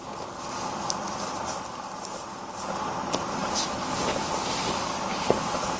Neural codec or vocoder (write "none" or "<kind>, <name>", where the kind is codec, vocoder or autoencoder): none